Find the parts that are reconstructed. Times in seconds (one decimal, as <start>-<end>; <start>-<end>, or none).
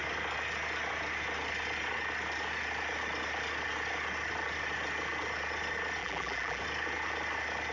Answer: 6.0-6.6